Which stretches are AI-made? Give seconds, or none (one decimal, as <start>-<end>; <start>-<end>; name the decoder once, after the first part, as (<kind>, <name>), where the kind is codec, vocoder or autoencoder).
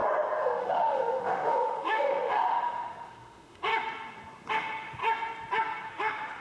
0.6-3.7 (autoencoder, DAC-VAE); 4.5-5.0; 5.9-6.4